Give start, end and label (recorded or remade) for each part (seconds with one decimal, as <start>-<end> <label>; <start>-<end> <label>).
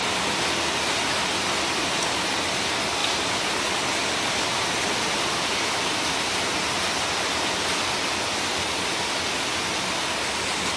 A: 0.0-10.8 recorded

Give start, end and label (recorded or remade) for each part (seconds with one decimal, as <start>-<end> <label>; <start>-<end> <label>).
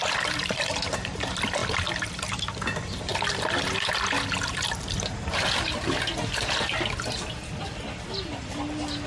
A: 0.0-9.1 recorded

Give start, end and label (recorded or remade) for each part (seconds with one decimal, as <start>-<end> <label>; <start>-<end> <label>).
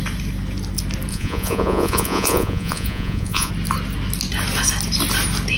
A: 0.0-1.1 recorded; 1.1-3.5 remade; 3.5-5.6 recorded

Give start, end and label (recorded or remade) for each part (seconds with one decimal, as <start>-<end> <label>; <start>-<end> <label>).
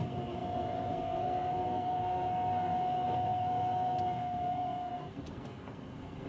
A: 0.0-6.3 remade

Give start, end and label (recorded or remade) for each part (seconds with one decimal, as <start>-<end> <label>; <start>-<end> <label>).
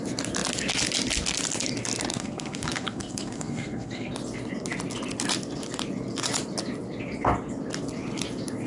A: 0.0-2.1 recorded; 2.1-4.1 remade; 4.1-8.7 recorded